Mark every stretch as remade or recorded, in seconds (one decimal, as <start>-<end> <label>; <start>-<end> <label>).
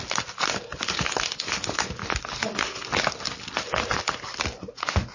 0.0-5.1 recorded